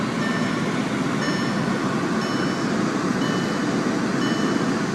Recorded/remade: recorded